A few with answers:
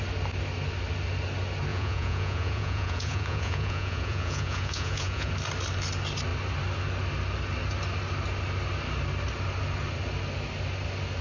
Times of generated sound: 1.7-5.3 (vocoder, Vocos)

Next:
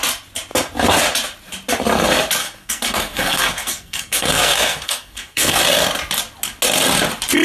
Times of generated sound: 2.4-5.6 (codec, SNAC)

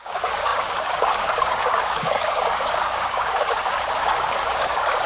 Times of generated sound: 0.0-5.1 (codec, DAC)

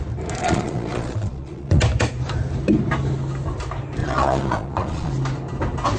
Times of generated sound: 0.4-1.8 (vocoder, Vocos); 4.0-5.1

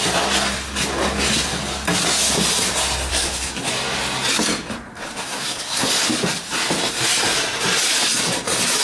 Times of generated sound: 3.1-3.7 (codec, SNAC); 4.9-5.9

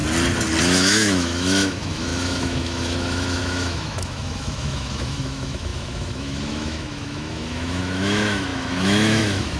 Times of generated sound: 0.6-9.6 (autoencoder, DAC-VAE)